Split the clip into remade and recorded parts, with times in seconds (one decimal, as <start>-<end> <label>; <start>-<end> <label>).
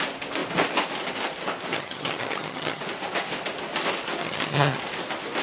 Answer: 0.0-1.7 recorded; 1.7-2.8 remade; 2.8-4.2 recorded; 4.2-4.8 remade; 4.8-5.4 recorded